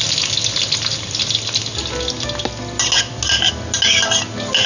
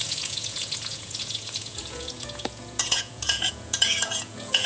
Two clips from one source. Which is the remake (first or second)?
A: second